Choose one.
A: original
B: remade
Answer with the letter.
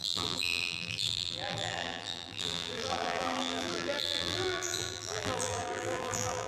B